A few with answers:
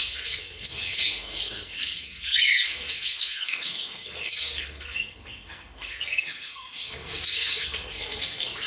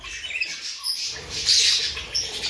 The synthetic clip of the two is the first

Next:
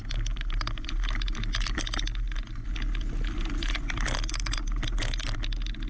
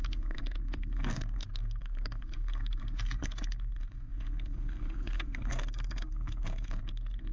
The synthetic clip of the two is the second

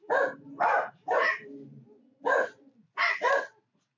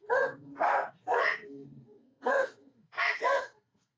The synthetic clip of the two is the second